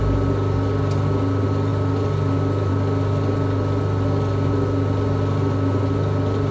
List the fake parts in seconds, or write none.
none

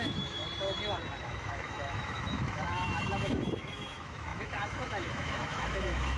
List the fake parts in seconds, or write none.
0.0-0.4; 1.2-6.2

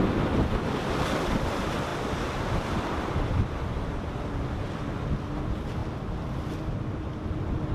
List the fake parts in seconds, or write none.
none

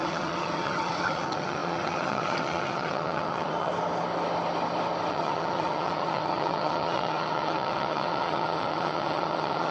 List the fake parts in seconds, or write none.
0.0-3.7; 5.1-9.7